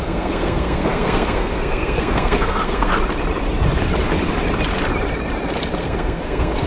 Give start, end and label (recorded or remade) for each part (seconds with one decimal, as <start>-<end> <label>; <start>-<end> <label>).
0.0-2.9 remade; 2.9-5.8 recorded; 5.8-6.7 remade